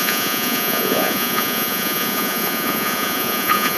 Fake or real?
fake